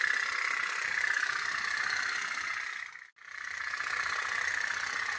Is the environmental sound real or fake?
real